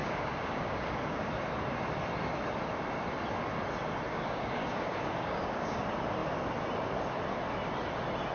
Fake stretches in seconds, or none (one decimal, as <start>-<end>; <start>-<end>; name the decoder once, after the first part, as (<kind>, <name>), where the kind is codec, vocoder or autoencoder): 0.0-1.3 (codec, DAC); 4.1-5.8